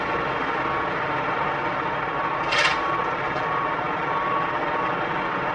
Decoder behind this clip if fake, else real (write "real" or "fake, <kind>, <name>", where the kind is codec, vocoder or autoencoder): real